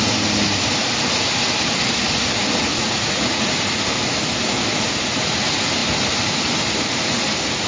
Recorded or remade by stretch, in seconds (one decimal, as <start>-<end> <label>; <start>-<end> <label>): 0.0-2.7 recorded; 2.7-3.5 remade; 3.5-7.7 recorded